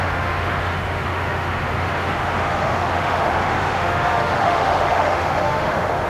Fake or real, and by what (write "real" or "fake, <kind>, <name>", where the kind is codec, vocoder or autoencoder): fake, autoencoder, DAC-VAE